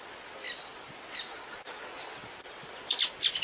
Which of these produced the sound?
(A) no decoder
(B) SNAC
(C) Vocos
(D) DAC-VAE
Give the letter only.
A